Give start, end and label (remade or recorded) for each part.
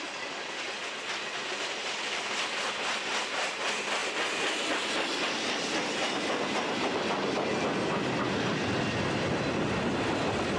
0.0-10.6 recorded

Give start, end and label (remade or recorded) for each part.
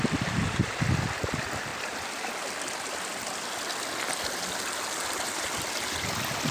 0.0-6.5 recorded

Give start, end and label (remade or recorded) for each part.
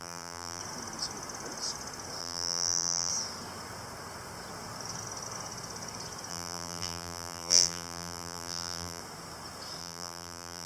0.0-0.6 remade; 0.6-2.2 recorded; 2.2-3.1 remade; 3.1-6.3 recorded; 6.3-9.0 remade; 9.0-9.8 recorded; 9.8-10.7 remade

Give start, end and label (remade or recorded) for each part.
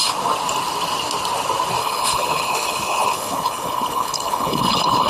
0.0-1.8 recorded; 1.8-5.1 remade